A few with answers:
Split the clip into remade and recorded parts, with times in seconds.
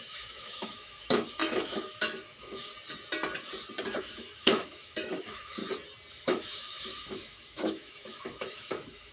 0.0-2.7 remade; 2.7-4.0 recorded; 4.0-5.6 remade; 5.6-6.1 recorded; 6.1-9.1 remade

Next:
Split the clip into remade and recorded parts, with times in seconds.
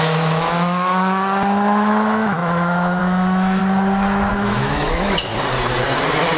0.0-3.6 remade; 3.6-4.3 recorded; 4.3-5.3 remade; 5.3-6.4 recorded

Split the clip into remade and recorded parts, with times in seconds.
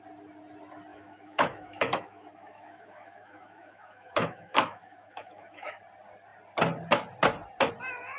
0.0-0.9 recorded; 0.9-5.8 remade; 5.8-8.2 recorded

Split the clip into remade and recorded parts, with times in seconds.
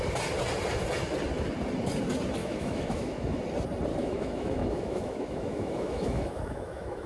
0.0-2.4 recorded; 2.4-3.4 remade; 3.4-3.9 recorded; 3.9-7.1 remade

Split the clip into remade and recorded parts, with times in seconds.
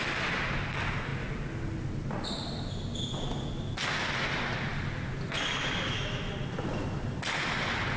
0.0-5.6 recorded; 5.6-6.3 remade; 6.3-8.0 recorded